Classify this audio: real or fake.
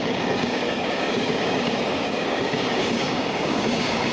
fake